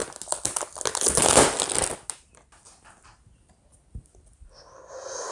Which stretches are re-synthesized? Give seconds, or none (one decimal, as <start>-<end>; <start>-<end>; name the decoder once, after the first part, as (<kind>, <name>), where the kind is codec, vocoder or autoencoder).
none